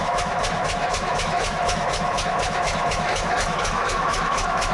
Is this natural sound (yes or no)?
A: no